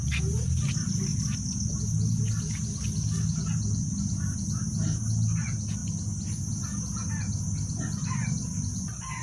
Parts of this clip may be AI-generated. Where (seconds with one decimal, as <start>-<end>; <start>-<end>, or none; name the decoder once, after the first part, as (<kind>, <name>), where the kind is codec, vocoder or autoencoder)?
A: none